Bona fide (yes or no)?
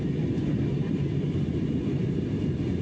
yes